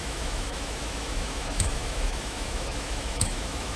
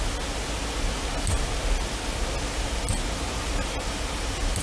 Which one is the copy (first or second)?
first